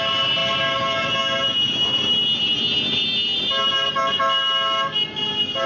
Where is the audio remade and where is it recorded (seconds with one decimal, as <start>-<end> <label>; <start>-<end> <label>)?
0.0-5.7 recorded